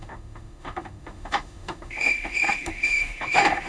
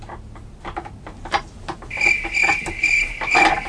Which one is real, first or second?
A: second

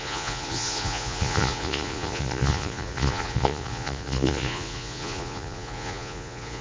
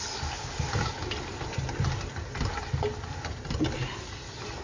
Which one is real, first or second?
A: second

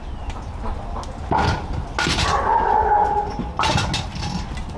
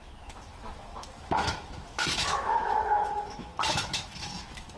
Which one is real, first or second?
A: first